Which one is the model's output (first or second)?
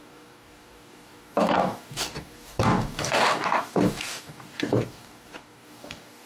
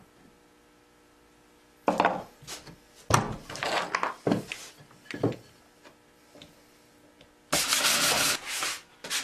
first